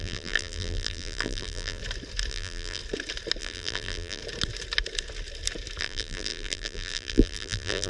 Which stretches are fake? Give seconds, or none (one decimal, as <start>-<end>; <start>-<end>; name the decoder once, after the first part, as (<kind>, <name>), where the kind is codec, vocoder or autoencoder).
0.0-1.8 (vocoder, BigVGAN v2); 2.3-2.8; 3.4-4.2; 5.8-7.9